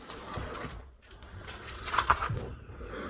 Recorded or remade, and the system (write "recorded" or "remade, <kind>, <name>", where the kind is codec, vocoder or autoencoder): remade, vocoder, Vocos